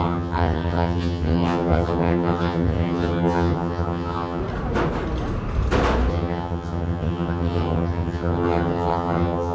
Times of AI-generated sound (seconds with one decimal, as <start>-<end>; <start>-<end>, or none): 0.0-4.4; 6.1-9.5

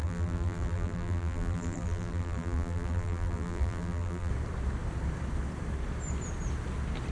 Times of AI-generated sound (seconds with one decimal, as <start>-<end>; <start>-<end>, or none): 0.0-4.3

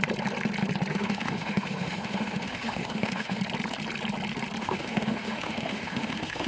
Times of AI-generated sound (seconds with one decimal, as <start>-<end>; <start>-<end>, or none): 0.9-3.4; 4.6-6.5

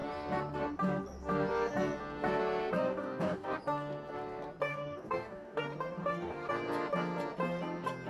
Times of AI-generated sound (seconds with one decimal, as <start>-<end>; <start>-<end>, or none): 2.7-3.6; 4.7-5.6; 6.0-6.5

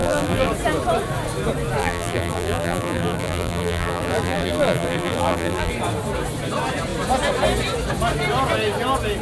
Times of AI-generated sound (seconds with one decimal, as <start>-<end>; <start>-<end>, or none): 0.0-0.5; 1.8-5.7

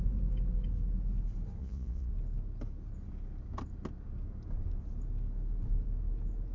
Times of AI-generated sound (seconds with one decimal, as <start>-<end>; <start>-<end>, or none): 1.6-2.1

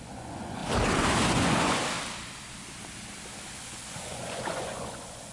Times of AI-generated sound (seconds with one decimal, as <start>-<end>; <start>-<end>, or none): 0.0-0.6; 1.3-1.8; 3.6-5.3

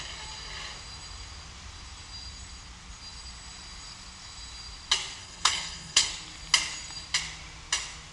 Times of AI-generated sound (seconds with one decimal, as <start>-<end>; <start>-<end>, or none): 5.2-6.1